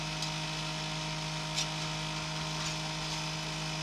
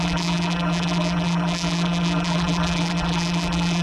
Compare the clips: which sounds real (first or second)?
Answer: first